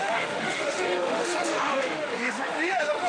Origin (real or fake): fake